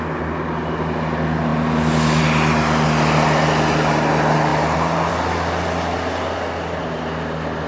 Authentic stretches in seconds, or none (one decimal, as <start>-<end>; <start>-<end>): 0.0-7.7